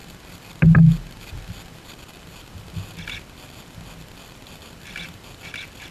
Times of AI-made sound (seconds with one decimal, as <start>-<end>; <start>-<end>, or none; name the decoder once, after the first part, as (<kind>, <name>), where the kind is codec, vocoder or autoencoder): none